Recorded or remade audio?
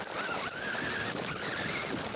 recorded